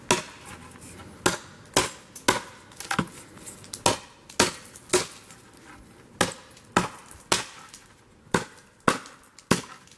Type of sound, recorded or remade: recorded